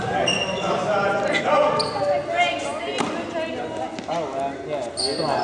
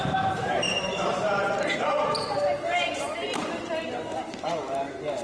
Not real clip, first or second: second